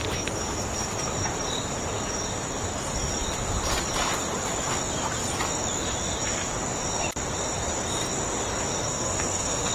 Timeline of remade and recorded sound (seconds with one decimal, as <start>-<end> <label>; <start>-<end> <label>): 0.0-8.9 recorded; 8.9-9.7 remade